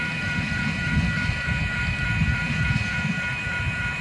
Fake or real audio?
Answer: fake